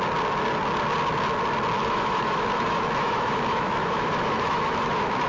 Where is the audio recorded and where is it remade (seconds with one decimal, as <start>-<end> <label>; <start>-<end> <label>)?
0.0-1.8 recorded; 1.8-5.3 remade